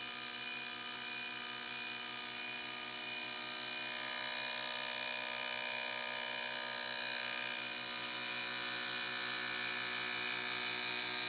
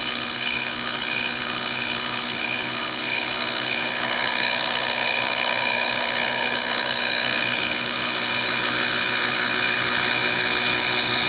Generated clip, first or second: second